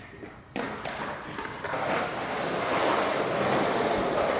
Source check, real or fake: real